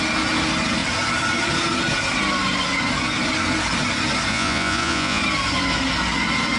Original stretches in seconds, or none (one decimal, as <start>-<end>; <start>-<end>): 0.0-4.3; 5.2-6.6